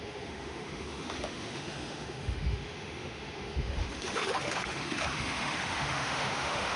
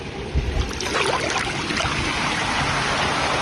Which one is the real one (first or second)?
second